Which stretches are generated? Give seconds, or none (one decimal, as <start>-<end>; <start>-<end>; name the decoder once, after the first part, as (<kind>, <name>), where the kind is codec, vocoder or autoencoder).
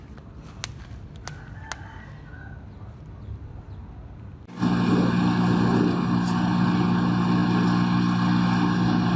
none